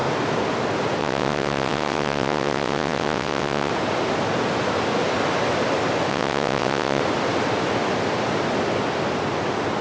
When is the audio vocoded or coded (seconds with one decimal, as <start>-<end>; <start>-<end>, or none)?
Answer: 1.0-3.7; 6.1-7.0